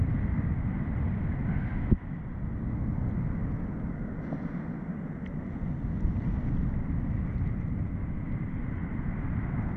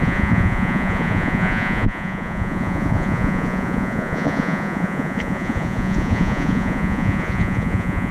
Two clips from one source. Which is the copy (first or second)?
second